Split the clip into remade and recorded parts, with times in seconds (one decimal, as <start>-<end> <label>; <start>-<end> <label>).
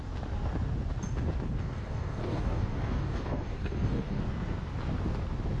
0.0-1.6 recorded; 1.6-4.2 remade; 4.2-5.6 recorded